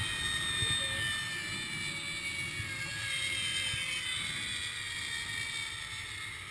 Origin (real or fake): real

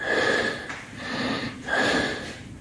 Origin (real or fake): real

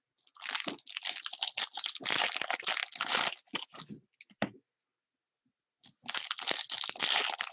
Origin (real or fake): real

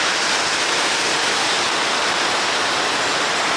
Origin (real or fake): real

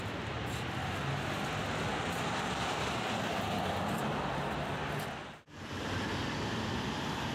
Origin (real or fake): real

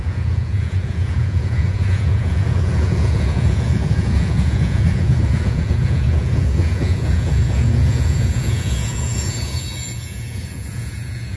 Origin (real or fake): fake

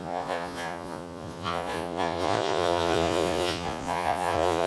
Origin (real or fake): fake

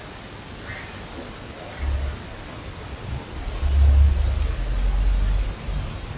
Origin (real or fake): real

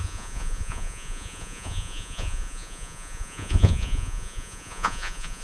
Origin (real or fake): fake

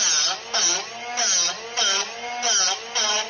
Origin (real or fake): real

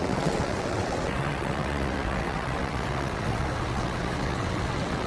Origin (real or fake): fake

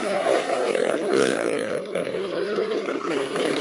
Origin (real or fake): fake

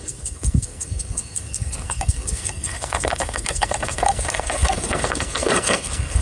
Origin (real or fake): fake